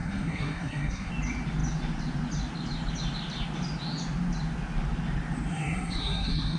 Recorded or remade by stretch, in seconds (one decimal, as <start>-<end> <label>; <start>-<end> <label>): 0.0-1.1 remade; 1.1-5.5 recorded; 5.5-6.6 remade